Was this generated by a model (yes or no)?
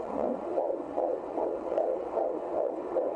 yes